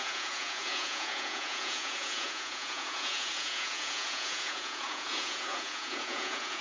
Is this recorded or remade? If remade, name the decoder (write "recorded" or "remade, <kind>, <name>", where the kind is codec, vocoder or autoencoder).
remade, vocoder, Vocos